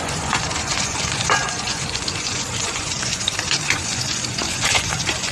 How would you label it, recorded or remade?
remade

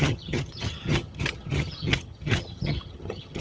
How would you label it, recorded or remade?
remade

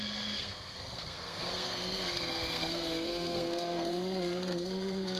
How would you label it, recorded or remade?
remade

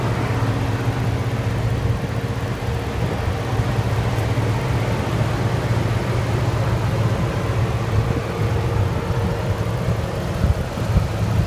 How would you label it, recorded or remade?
recorded